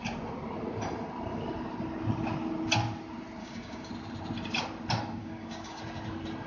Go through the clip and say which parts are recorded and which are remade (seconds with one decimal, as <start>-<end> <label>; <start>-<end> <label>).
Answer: 0.0-3.4 recorded; 3.4-3.9 remade; 3.9-5.2 recorded; 5.2-5.8 remade; 5.8-6.5 recorded